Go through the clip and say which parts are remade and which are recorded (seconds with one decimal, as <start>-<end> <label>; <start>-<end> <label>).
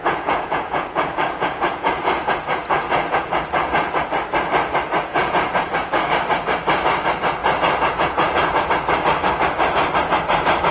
0.0-4.1 remade; 4.1-5.1 recorded; 5.1-6.1 remade; 6.1-7.4 recorded; 7.4-8.7 remade; 8.7-10.7 recorded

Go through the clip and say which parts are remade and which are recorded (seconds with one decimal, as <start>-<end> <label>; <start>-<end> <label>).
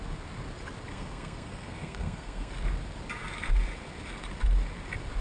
0.0-0.9 recorded; 0.9-2.5 remade; 2.5-5.2 recorded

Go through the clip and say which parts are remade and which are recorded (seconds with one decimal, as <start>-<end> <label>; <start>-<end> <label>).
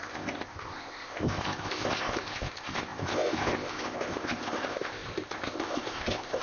0.0-6.4 remade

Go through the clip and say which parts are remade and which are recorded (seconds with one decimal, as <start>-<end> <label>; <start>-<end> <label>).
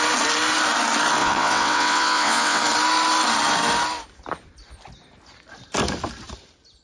0.0-1.2 recorded; 1.2-2.6 remade; 2.6-6.8 recorded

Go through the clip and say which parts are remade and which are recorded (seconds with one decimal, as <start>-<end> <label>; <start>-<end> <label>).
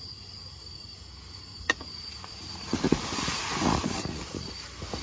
0.0-1.5 recorded; 1.5-4.5 remade; 4.5-5.0 recorded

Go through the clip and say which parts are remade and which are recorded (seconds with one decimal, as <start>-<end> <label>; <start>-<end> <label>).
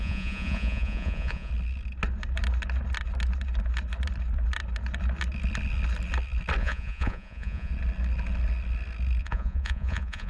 0.0-1.5 remade; 1.5-6.6 recorded; 6.6-7.7 remade; 7.7-9.2 recorded; 9.2-10.3 remade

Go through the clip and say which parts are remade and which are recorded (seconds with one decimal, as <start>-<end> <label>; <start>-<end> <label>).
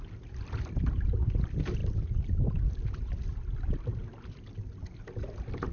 0.0-5.7 recorded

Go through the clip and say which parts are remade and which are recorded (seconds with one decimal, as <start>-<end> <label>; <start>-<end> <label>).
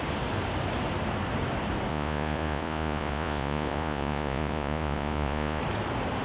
0.0-1.9 recorded; 1.9-5.6 remade; 5.6-6.2 recorded